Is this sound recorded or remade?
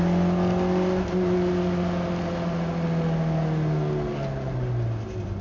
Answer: recorded